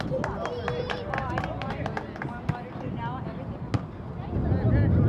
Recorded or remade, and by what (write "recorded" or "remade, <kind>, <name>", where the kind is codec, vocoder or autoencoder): recorded